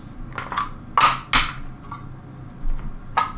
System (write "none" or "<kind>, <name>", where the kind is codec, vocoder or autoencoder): none